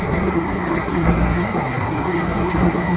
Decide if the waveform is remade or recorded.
remade